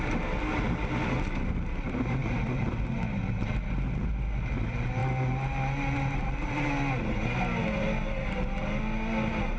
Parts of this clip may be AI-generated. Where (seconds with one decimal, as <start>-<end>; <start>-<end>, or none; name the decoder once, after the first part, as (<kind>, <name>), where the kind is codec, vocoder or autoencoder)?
none